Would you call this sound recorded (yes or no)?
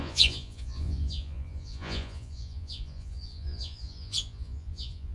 no